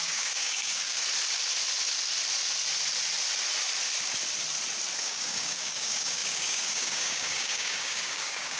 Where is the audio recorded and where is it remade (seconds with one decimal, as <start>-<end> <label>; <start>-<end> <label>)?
0.0-1.0 remade; 1.0-5.0 recorded; 5.0-8.6 remade